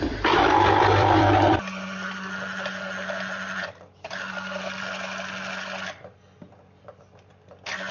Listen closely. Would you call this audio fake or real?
fake